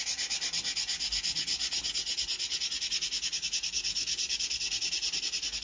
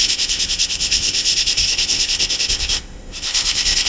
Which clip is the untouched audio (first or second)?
first